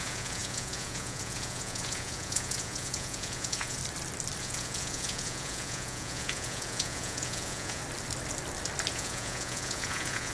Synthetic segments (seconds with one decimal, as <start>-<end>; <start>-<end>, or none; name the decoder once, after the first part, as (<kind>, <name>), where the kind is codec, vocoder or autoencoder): 0.0-3.8 (vocoder, Vocos); 4.4-7.8; 8.9-10.3